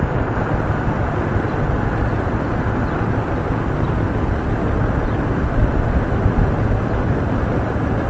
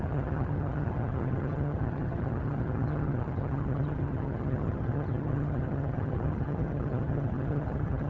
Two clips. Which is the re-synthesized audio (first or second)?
second